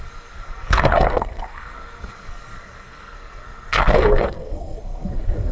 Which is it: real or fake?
fake